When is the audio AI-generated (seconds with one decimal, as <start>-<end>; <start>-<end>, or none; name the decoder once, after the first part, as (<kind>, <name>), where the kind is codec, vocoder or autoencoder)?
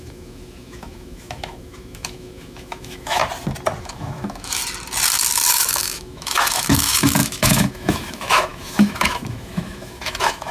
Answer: 0.0-3.2 (autoencoder, DAC-VAE); 3.8-4.6; 5.5-10.5